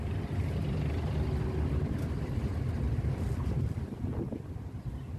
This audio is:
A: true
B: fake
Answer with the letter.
A